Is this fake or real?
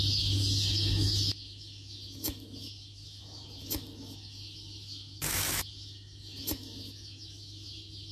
fake